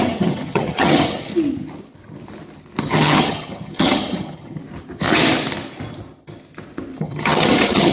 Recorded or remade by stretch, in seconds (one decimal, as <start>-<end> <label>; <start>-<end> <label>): 0.0-1.3 remade; 1.3-2.8 recorded; 2.8-4.6 remade; 4.6-7.0 recorded; 7.0-7.9 remade